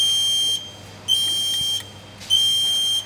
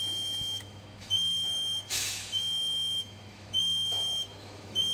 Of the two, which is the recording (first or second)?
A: first